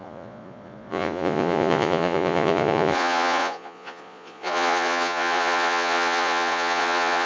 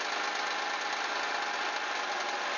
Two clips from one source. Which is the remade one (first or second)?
first